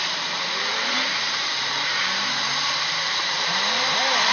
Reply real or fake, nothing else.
fake